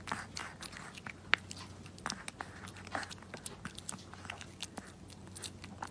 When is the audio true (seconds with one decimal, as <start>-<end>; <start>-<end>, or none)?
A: 0.0-5.9